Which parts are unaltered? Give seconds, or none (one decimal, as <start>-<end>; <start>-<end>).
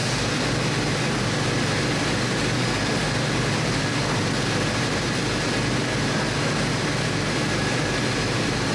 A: 0.0-8.7